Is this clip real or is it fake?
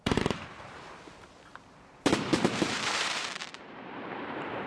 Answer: fake